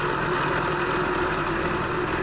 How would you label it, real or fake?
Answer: real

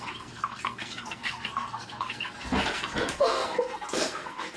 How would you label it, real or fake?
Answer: fake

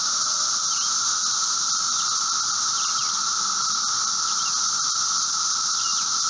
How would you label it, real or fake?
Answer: real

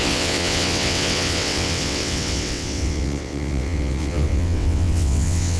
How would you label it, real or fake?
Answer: fake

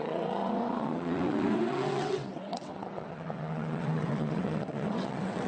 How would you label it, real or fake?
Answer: fake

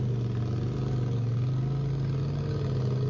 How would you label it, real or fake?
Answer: real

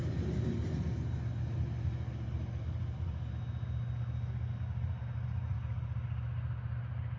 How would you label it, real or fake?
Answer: real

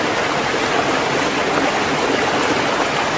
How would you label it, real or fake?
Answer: real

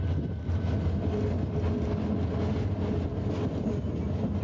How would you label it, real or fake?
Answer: real